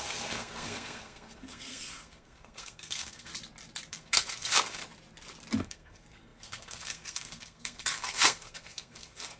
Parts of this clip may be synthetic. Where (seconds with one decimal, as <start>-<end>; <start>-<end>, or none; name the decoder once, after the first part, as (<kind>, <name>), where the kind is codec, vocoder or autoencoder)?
0.0-3.3 (codec, SNAC); 3.9-4.8; 5.6-9.4